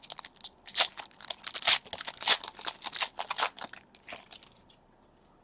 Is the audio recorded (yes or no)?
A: yes